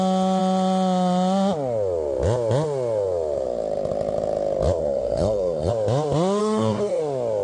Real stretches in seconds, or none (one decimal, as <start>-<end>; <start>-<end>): 0.0-4.8; 5.7-6.4; 7.0-7.4